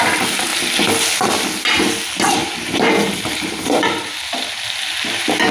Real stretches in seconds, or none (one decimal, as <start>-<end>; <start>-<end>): 0.0-2.4; 4.2-5.5

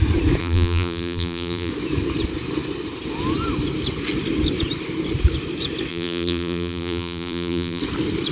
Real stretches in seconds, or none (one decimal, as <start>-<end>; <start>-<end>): 0.0-0.4; 1.7-5.9; 7.8-8.3

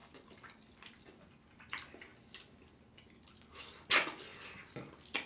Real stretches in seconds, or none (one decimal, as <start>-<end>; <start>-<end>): 0.0-5.3

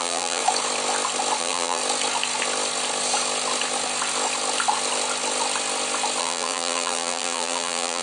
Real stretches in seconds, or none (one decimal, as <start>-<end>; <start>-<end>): 0.4-1.4; 1.8-6.2